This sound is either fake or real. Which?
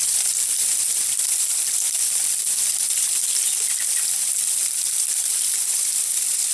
real